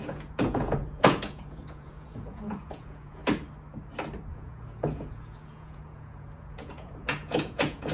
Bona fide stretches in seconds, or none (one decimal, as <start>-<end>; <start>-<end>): 3.2-4.3